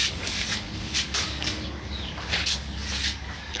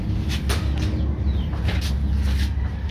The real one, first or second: second